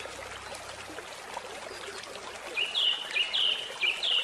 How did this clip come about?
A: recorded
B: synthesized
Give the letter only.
A